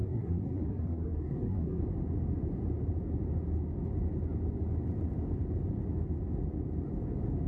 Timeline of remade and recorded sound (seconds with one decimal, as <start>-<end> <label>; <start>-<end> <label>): 0.0-1.8 remade; 1.8-7.5 recorded